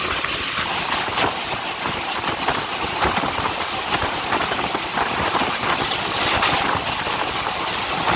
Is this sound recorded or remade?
recorded